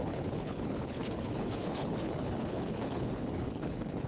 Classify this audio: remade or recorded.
remade